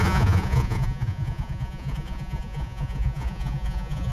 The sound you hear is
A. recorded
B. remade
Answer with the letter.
B